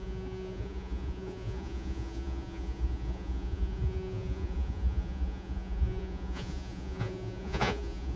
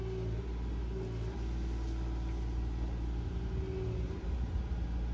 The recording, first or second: second